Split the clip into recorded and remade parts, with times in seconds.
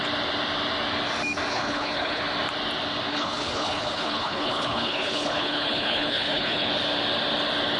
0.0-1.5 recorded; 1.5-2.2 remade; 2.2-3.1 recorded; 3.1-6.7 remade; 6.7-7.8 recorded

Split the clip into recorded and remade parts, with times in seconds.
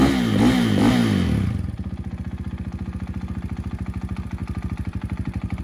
0.0-1.0 recorded; 1.0-1.7 remade; 1.7-4.4 recorded; 4.4-5.6 remade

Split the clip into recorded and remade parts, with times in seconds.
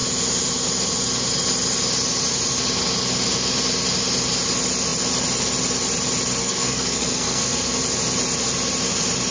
0.0-6.4 recorded; 6.4-7.8 remade; 7.8-9.3 recorded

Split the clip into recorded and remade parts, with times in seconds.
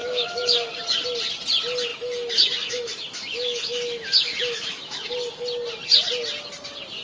0.0-0.7 remade; 0.7-1.9 recorded; 1.9-5.1 remade; 5.1-7.0 recorded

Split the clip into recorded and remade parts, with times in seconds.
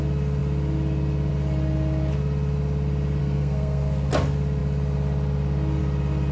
0.0-3.2 recorded; 3.2-4.1 remade; 4.1-6.3 recorded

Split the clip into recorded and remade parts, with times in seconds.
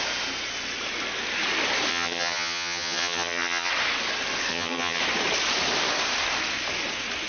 0.0-1.9 recorded; 1.9-3.7 remade; 3.7-4.5 recorded; 4.5-5.0 remade; 5.0-7.3 recorded